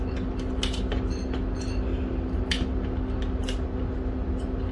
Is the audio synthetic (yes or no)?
no